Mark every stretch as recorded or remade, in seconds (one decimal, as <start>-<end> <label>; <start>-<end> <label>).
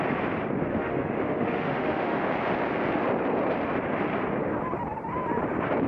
0.0-0.7 recorded; 0.7-2.3 remade; 2.3-5.9 recorded